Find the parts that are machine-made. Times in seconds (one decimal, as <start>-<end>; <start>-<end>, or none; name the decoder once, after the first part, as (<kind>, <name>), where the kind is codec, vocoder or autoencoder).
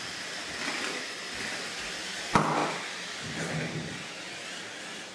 none